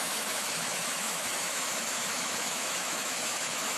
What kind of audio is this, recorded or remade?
remade